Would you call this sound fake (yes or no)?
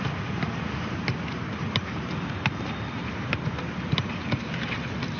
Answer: no